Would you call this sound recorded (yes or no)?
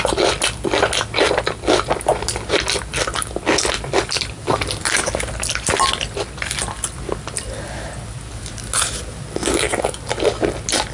yes